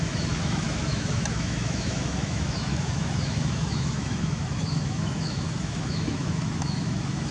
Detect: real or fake fake